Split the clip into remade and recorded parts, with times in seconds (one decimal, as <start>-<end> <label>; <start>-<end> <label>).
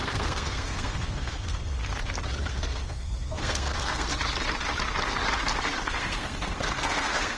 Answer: 0.0-1.8 remade; 1.8-2.5 recorded; 2.5-4.1 remade; 4.1-5.9 recorded; 5.9-7.4 remade